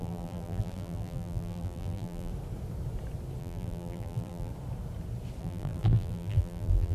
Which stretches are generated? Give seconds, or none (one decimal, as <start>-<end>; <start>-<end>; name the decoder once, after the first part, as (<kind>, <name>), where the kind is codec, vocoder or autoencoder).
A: 0.0-2.3 (vocoder, BigVGAN v2); 3.4-4.5; 5.4-6.9